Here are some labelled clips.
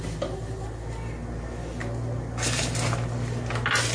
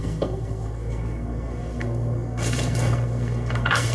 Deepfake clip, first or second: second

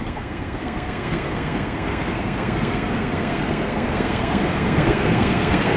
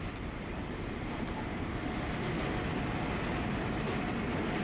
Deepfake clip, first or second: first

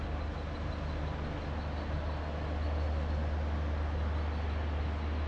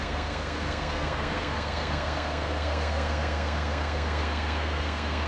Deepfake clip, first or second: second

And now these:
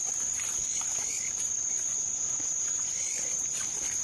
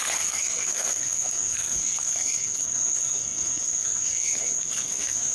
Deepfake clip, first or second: second